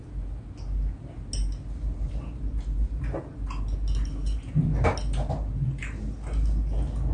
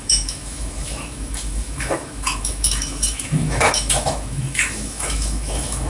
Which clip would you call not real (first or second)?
second